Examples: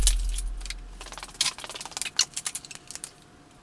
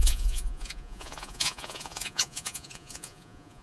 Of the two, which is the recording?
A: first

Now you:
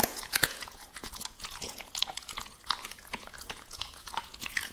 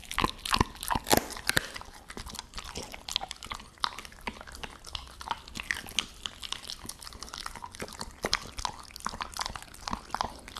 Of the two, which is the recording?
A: second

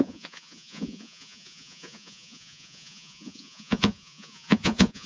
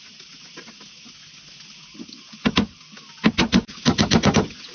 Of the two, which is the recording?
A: second